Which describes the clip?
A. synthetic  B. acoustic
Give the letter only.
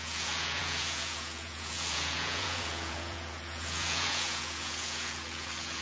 A